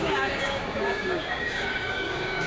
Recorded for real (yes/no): no